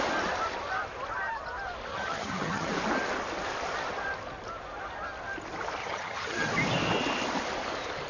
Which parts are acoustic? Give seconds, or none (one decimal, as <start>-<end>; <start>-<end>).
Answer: 0.0-1.9; 2.7-5.8; 6.5-8.1